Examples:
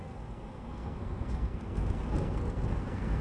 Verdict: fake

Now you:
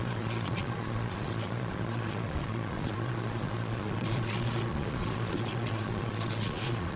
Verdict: fake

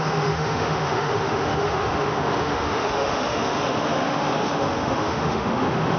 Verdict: fake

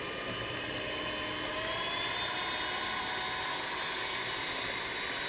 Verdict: real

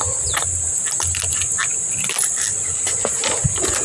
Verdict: real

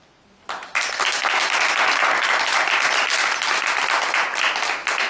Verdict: real